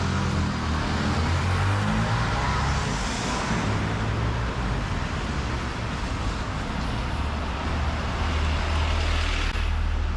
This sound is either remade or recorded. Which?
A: recorded